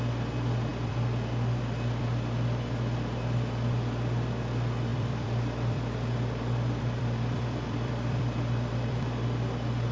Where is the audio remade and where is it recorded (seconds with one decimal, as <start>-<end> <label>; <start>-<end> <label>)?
0.0-0.7 recorded; 0.7-1.6 remade; 1.6-4.9 recorded; 4.9-9.0 remade; 9.0-9.9 recorded